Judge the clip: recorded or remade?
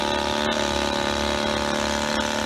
recorded